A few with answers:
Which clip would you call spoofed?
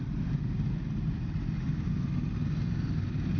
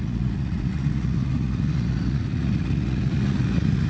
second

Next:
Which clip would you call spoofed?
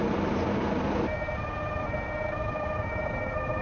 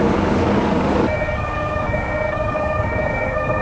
second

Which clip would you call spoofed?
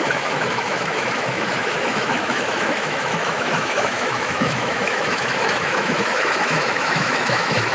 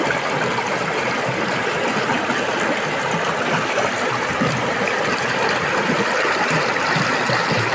first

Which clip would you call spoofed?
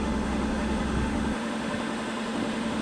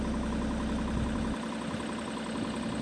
first